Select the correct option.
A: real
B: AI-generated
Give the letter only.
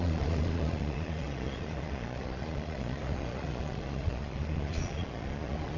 B